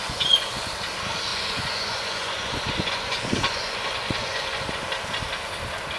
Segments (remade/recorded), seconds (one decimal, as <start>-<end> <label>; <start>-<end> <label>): 0.0-0.7 remade; 0.7-1.3 recorded; 1.3-4.7 remade; 4.7-6.0 recorded